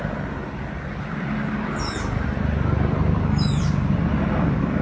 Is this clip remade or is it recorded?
recorded